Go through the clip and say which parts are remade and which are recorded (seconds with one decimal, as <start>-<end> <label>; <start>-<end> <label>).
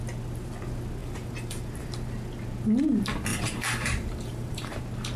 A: 0.0-1.0 recorded; 1.0-1.9 remade; 1.9-3.3 recorded; 3.3-4.8 remade; 4.8-5.2 recorded